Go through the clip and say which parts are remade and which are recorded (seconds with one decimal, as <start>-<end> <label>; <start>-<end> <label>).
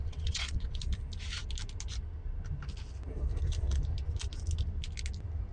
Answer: 0.0-0.8 remade; 0.8-5.5 recorded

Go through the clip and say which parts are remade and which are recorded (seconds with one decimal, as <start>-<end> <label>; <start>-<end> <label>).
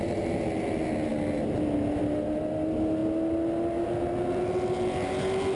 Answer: 0.0-5.6 recorded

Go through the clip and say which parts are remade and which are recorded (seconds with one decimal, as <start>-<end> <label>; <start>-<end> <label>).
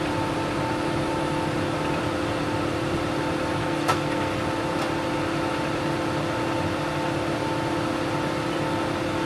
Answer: 0.0-3.6 recorded; 3.6-4.4 remade; 4.4-9.3 recorded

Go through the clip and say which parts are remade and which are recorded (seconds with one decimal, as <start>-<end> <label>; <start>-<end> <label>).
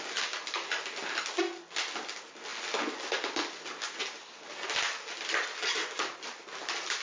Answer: 0.0-7.0 recorded